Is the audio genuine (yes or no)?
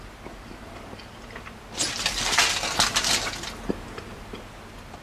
yes